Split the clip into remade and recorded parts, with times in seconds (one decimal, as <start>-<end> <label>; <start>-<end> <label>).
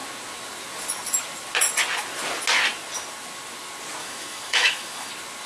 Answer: 0.0-4.0 recorded; 4.0-5.1 remade; 5.1-5.5 recorded